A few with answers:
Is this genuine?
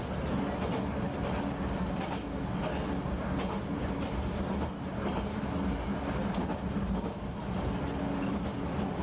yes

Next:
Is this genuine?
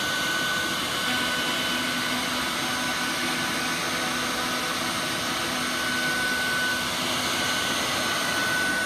yes